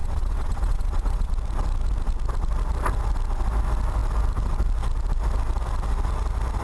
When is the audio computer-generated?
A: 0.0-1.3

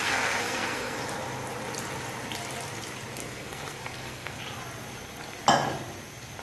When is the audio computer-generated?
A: 0.0-1.0; 3.2-4.4

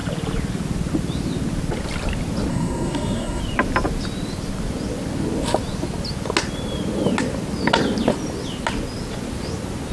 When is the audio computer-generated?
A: 2.5-3.4

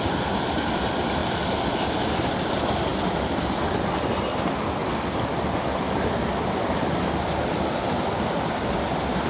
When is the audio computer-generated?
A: none

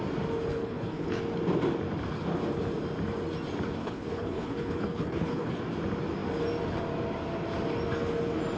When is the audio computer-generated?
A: 0.5-1.2; 3.8-5.6

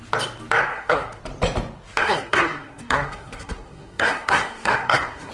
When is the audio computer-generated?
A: 0.7-1.2; 2.0-5.3

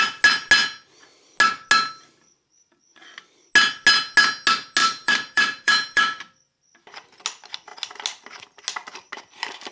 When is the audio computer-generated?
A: 4.8-6.4